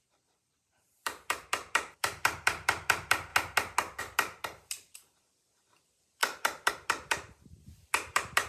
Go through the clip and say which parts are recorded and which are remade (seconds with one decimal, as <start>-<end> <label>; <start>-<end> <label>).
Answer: 0.0-3.3 remade; 3.3-4.0 recorded; 4.0-8.5 remade